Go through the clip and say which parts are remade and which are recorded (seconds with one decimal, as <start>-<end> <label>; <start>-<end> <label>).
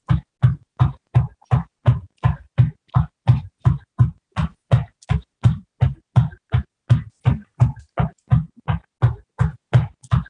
0.0-10.3 recorded